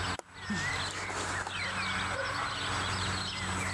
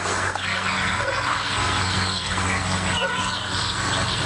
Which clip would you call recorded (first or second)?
first